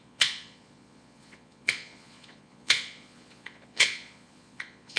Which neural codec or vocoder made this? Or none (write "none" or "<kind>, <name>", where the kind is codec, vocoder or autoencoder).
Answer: vocoder, Vocos